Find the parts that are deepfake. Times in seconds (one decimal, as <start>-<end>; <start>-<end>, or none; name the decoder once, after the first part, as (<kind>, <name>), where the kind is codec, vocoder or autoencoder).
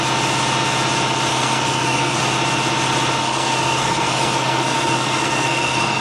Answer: 1.3-2.2 (codec, SNAC); 3.2-6.0